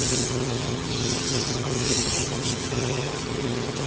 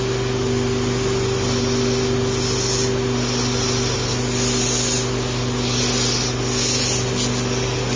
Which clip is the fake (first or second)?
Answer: first